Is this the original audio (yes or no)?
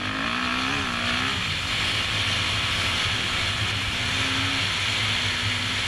yes